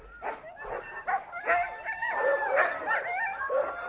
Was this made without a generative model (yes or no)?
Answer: yes